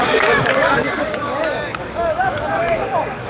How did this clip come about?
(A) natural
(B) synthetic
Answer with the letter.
B